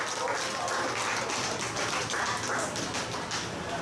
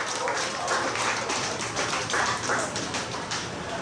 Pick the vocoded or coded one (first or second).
second